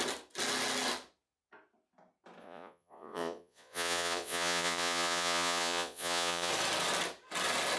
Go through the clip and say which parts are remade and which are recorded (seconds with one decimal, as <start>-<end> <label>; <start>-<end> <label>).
0.0-2.4 recorded; 2.4-6.5 remade; 6.5-7.8 recorded